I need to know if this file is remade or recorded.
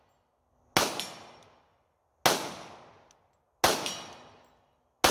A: recorded